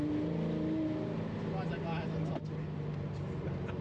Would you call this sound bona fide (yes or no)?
yes